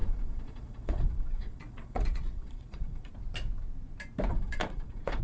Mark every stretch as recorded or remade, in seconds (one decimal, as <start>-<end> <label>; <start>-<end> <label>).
0.0-3.1 remade; 3.1-4.3 recorded; 4.3-5.2 remade

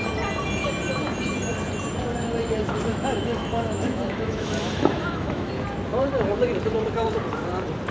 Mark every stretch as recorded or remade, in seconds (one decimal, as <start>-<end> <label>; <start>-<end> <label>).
0.0-2.9 recorded; 2.9-5.5 remade; 5.5-7.9 recorded

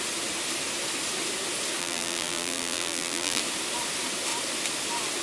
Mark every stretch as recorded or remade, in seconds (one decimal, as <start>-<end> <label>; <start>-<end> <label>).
0.0-1.8 recorded; 1.8-3.4 remade; 3.4-5.2 recorded

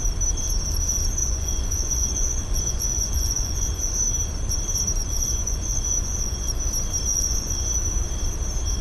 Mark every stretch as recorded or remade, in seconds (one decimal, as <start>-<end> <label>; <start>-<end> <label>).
0.0-1.2 recorded; 1.2-4.0 remade; 4.0-5.0 recorded; 5.0-6.5 remade; 6.5-7.1 recorded; 7.1-7.7 remade; 7.7-8.8 recorded

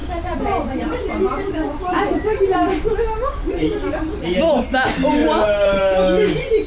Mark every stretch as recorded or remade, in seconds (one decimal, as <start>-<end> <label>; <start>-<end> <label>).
0.0-0.9 remade; 0.9-1.3 recorded; 1.3-4.0 remade; 4.0-5.2 recorded; 5.2-5.8 remade; 5.8-6.7 recorded

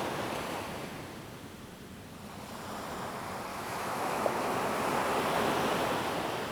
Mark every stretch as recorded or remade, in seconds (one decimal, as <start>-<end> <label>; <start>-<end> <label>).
0.0-3.5 recorded; 3.5-4.4 remade; 4.4-6.5 recorded